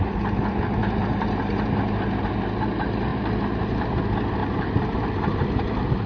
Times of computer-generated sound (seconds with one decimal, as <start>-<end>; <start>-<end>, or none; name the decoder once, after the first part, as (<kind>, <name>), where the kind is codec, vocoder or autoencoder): 0.8-1.4 (vocoder, BigVGAN v2); 3.1-3.9; 4.4-5.4